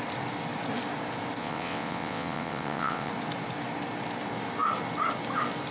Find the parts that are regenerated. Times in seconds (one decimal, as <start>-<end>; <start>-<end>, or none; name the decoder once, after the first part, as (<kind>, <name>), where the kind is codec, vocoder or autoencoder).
1.4-3.1 (vocoder, WaveNeXt)